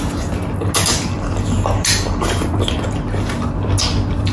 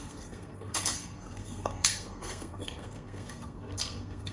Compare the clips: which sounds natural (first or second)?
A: first